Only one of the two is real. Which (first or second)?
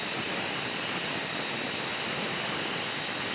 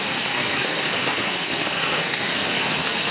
first